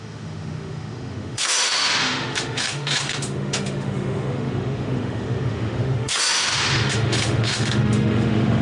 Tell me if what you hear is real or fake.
fake